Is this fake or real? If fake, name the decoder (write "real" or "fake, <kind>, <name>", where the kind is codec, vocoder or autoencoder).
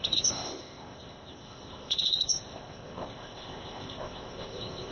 fake, codec, ZipCodec